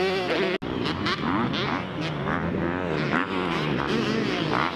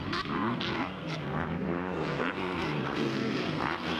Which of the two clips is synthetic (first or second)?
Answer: second